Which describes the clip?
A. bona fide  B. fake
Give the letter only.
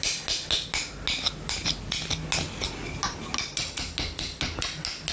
A